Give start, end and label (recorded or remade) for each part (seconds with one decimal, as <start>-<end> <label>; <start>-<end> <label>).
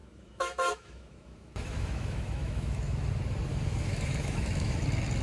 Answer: 0.0-3.1 remade; 3.1-3.5 recorded; 3.5-4.8 remade; 4.8-5.2 recorded